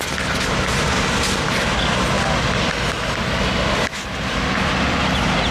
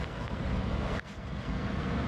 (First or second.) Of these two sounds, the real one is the first